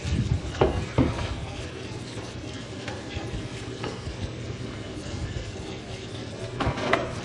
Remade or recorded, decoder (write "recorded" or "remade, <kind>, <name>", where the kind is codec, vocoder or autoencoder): remade, codec, SNAC